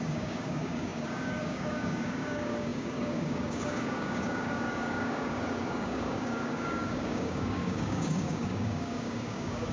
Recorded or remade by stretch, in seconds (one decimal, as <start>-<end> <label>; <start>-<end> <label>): 0.0-9.7 remade